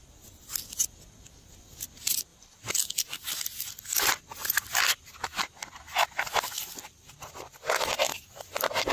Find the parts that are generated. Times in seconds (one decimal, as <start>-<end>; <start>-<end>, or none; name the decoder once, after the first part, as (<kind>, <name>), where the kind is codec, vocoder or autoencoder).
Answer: none